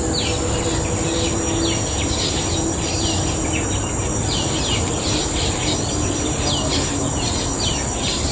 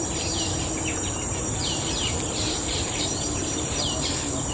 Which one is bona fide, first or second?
first